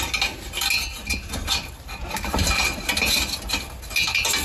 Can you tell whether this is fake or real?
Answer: real